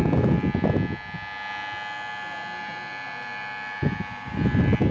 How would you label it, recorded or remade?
recorded